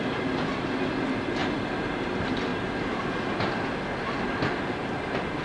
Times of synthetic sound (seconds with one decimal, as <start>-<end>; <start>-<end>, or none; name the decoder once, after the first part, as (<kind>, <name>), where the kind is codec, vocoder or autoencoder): none